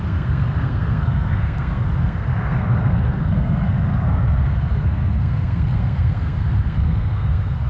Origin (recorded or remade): remade